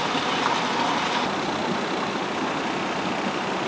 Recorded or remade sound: recorded